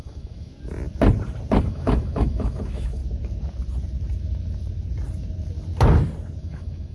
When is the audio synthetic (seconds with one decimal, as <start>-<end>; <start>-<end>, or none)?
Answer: 0.0-0.5; 1.6-3.0; 6.4-6.9